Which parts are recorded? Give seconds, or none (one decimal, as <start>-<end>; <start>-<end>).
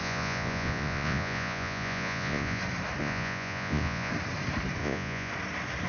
2.6-3.0; 4.1-4.8; 5.3-5.9